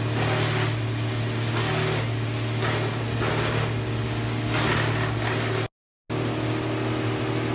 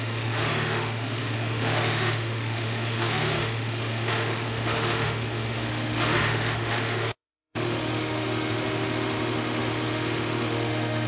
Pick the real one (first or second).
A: first